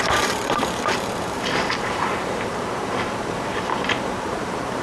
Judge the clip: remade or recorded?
remade